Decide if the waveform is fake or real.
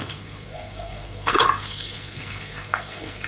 fake